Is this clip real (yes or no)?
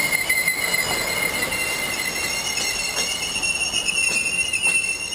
yes